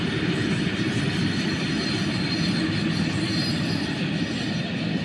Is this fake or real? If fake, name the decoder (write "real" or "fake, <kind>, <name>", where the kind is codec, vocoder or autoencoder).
real